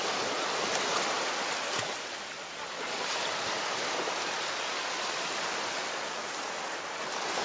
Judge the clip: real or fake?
real